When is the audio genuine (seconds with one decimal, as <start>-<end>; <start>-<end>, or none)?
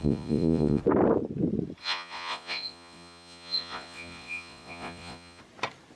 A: 0.8-1.8; 5.4-6.0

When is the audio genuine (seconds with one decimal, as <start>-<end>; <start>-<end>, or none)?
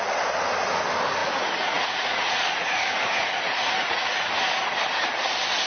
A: 0.0-1.2; 4.3-5.7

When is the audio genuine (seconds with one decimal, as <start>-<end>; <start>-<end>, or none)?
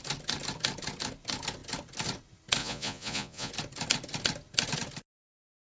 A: 0.0-2.6; 3.5-5.6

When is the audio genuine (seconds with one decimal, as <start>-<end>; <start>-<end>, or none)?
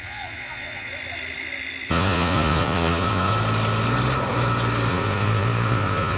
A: 0.9-1.9; 3.3-4.9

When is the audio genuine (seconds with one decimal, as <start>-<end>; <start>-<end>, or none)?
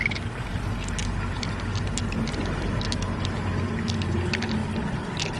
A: 0.0-5.4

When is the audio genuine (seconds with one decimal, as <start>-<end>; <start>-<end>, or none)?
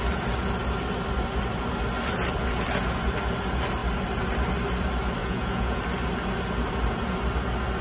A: 0.0-5.2; 5.8-7.8